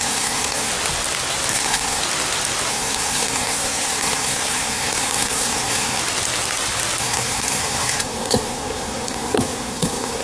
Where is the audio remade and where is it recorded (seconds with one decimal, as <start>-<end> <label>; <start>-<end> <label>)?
0.0-0.7 remade; 0.7-1.5 recorded; 1.5-2.0 remade; 2.0-2.7 recorded; 2.7-6.0 remade; 6.0-7.0 recorded; 7.0-10.2 remade